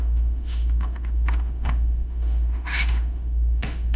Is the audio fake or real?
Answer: fake